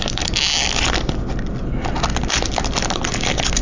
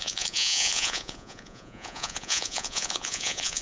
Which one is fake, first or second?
second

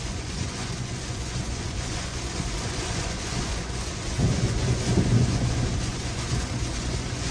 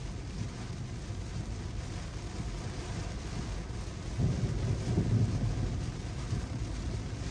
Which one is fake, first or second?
first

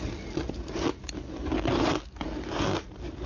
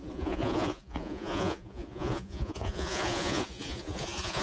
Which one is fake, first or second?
second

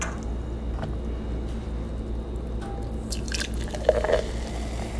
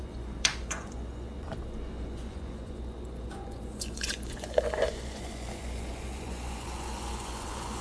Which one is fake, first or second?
second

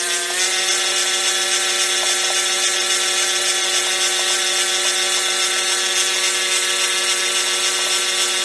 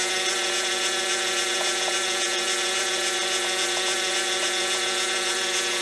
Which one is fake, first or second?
second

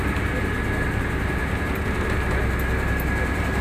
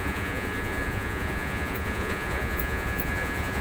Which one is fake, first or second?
second